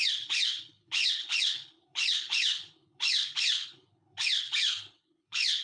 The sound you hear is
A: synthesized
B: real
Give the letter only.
A